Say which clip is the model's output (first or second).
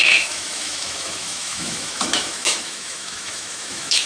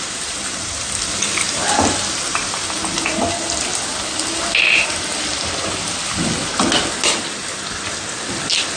first